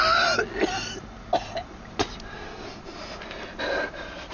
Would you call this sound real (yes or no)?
yes